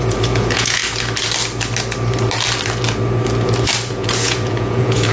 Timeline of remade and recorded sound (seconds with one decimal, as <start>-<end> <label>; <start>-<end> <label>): 0.0-0.8 remade; 0.8-3.9 recorded; 3.9-5.1 remade